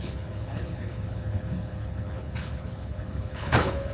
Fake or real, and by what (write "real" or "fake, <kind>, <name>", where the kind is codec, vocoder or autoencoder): fake, codec, HILCodec